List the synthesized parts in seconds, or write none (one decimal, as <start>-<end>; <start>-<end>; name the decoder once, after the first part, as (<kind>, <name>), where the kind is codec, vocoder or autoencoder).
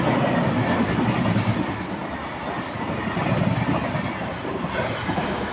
none